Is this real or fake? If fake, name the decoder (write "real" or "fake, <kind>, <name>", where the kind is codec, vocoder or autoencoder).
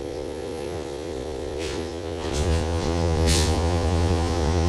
fake, vocoder, Vocos